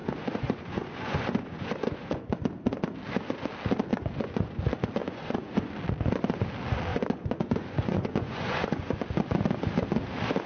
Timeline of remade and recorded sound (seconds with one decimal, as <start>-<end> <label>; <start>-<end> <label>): 0.0-2.3 remade; 2.3-3.9 recorded; 3.9-4.6 remade; 4.6-5.0 recorded; 5.0-5.7 remade; 5.7-6.9 recorded; 6.9-8.9 remade; 8.9-10.5 recorded